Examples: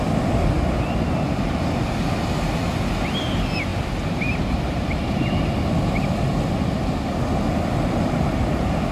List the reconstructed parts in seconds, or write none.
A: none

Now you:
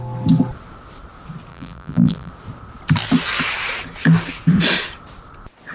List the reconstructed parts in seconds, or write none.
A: 1.5-2.3 (vocoder, BigVGAN v2)

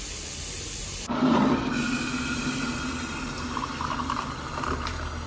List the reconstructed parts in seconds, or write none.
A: 0.8-1.4 (vocoder, BigVGAN v2)

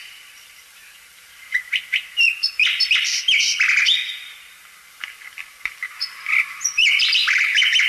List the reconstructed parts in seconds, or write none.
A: 0.0-3.8 (vocoder, BigVGAN v2); 4.9-7.9